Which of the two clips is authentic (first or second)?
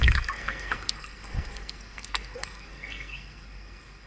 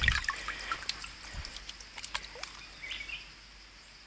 second